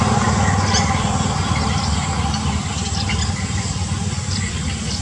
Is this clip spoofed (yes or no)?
no